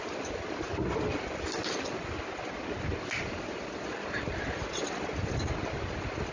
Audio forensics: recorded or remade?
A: recorded